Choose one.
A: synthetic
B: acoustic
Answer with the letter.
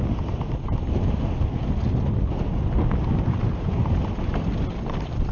B